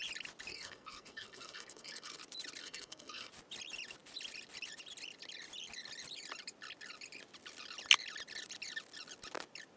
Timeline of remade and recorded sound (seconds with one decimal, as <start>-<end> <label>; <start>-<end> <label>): 0.0-0.5 recorded; 0.5-2.2 remade; 2.2-2.6 recorded; 2.6-3.3 remade; 3.3-9.8 recorded